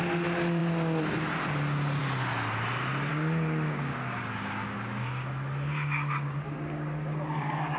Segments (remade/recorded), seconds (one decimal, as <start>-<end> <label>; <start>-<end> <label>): 0.0-3.1 recorded; 3.1-7.8 remade